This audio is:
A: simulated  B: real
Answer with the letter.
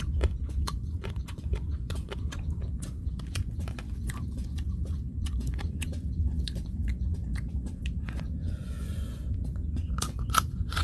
A